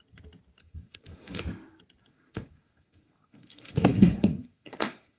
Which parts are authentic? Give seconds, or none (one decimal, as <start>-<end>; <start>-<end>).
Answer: 0.0-0.6; 1.4-2.1